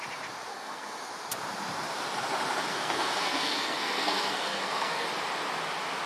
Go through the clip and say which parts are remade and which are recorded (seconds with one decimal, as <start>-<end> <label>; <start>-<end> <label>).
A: 0.0-0.5 recorded; 0.5-1.0 remade; 1.0-2.7 recorded; 2.7-5.1 remade; 5.1-6.1 recorded